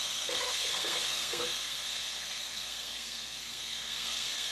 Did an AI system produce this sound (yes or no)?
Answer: yes